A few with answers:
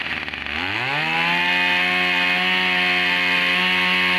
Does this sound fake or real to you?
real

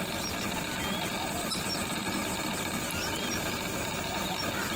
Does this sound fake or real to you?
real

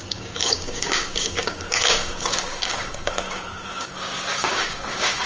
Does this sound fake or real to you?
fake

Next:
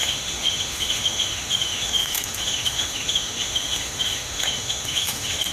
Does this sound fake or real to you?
fake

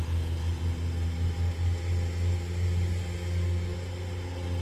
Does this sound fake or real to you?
real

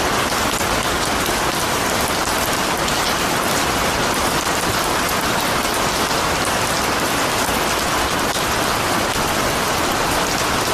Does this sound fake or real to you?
real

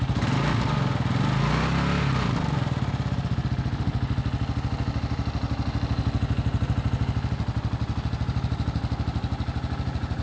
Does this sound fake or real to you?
real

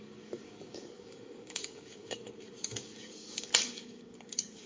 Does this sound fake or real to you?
fake